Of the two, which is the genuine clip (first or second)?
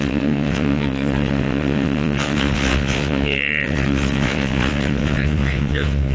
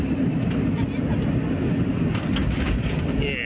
second